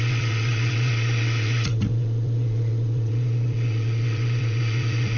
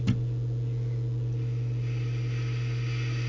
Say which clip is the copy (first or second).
first